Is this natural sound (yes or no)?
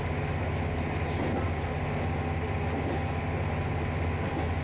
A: yes